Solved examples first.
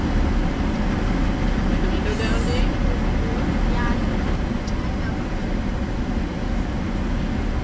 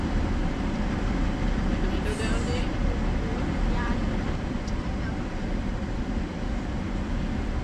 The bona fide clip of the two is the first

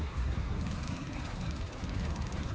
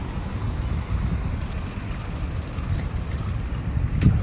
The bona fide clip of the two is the second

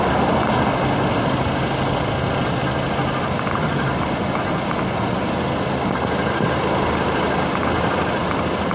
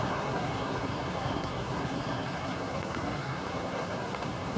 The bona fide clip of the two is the first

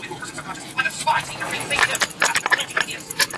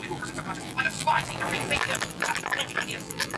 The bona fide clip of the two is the first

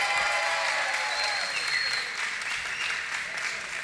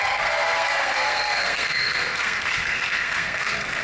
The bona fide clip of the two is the first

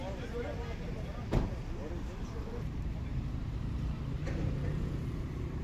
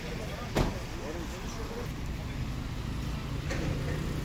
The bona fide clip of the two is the second